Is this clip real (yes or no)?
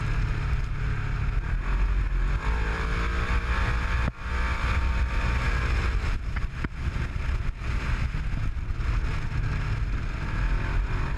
yes